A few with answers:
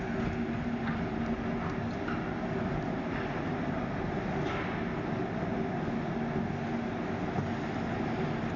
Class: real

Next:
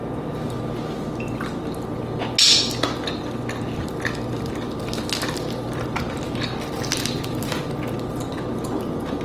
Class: real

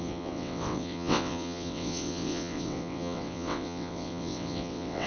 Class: fake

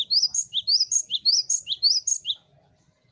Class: real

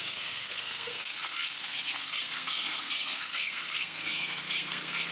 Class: fake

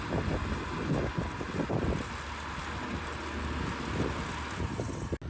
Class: real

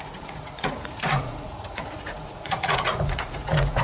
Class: fake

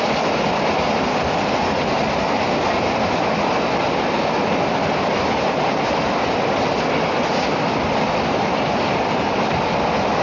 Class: real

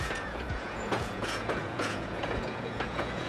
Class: fake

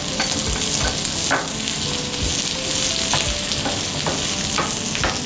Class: real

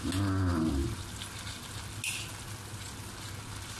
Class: real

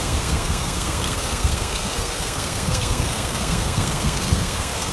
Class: fake